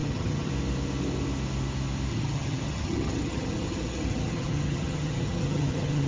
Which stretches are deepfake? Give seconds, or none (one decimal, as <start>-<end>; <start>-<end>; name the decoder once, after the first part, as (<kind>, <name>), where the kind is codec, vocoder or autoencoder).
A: 0.0-0.5 (vocoder, HiFi-GAN); 2.1-6.1